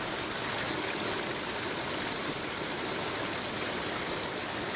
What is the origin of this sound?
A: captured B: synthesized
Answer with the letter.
A